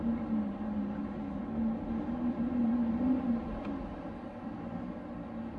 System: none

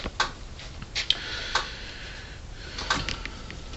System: none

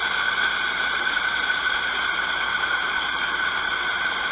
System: vocoder, BigVGAN v2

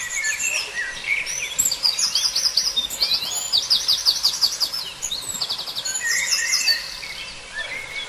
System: none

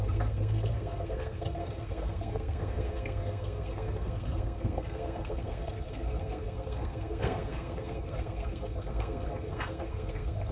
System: codec, SNAC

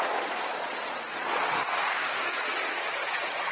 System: vocoder, Vocos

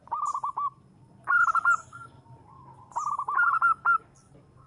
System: none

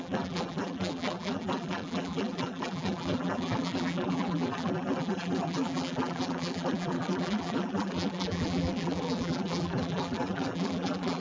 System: vocoder, BigVGAN v2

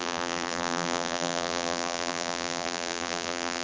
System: vocoder, BigVGAN v2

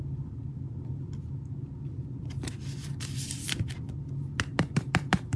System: none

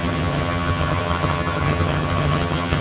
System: vocoder, HiFi-GAN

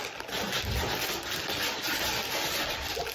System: none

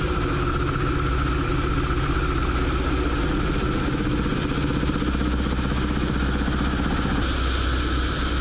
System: none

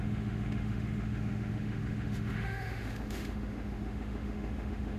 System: autoencoder, DAC-VAE